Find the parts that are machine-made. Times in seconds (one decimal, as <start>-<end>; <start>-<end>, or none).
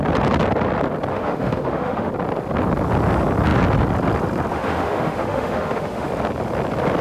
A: 1.1-2.1; 4.5-6.1